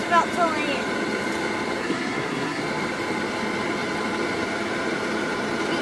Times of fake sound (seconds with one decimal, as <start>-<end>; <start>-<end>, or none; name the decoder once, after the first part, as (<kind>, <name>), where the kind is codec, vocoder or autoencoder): 1.8-2.6 (codec, SNAC)